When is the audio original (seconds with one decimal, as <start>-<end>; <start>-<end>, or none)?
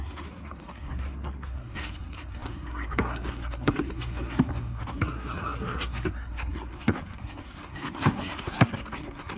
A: none